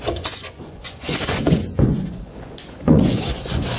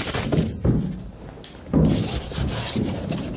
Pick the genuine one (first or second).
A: second